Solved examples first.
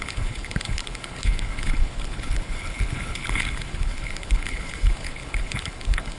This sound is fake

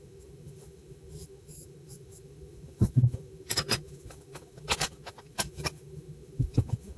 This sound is fake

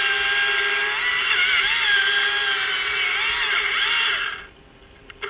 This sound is real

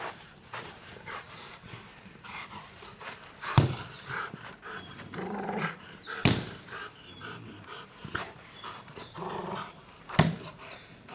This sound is fake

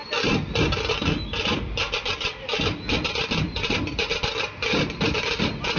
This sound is real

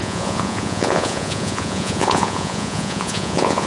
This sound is fake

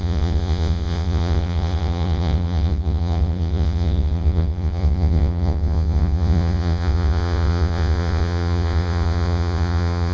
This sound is fake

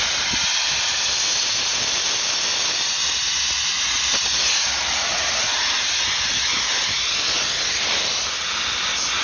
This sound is real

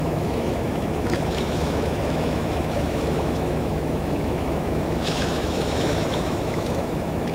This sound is fake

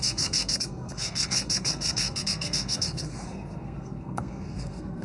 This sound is fake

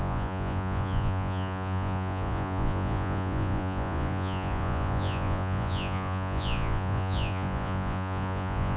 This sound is fake